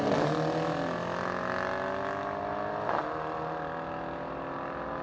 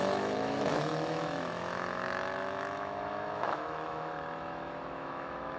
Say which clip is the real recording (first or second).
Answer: first